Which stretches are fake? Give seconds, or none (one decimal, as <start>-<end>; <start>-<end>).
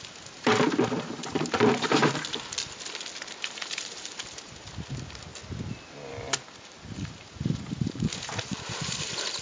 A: 0.0-2.0; 3.4-5.3; 6.6-9.4